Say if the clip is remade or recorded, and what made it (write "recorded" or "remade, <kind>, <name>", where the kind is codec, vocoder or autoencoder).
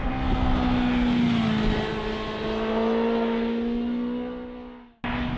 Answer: recorded